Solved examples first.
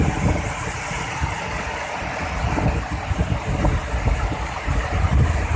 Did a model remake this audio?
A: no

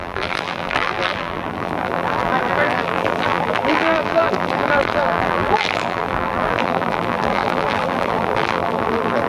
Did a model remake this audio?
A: yes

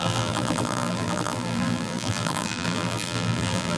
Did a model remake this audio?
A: yes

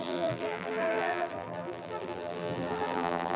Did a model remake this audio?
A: yes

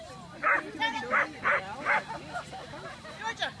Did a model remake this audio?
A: no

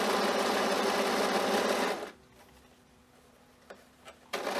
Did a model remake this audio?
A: no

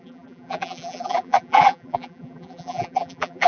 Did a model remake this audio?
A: yes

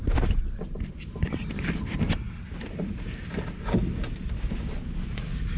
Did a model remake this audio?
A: yes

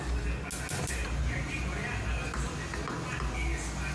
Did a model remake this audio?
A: no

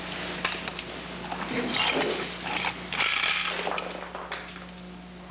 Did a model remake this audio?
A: no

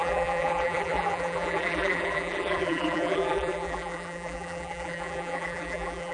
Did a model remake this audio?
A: yes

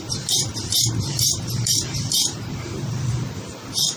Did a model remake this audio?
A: yes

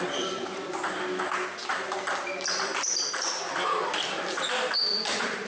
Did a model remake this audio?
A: no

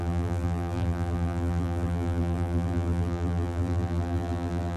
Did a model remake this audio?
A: yes